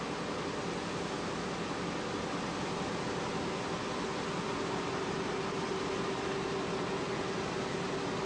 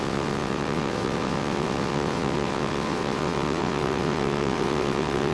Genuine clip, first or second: first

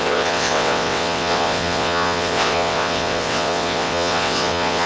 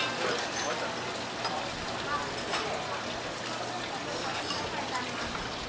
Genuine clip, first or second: second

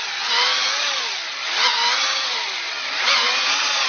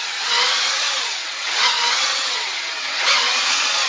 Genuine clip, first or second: first